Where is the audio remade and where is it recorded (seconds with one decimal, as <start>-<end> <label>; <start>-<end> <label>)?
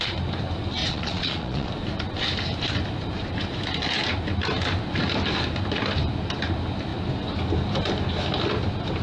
0.0-0.8 recorded; 0.8-1.7 remade; 1.7-9.0 recorded